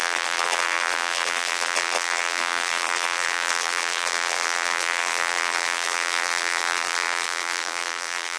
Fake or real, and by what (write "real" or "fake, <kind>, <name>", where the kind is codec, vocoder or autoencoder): fake, vocoder, BigVGAN v2